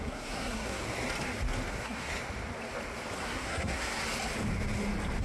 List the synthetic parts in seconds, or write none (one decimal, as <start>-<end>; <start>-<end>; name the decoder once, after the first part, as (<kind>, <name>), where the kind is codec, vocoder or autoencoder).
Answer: 0.0-0.8 (codec, SNAC); 1.7-2.1; 3.2-4.0